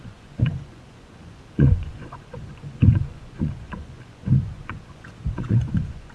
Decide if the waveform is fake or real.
fake